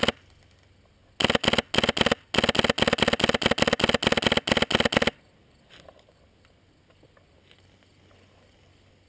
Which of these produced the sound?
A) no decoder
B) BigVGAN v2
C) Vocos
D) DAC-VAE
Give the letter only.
A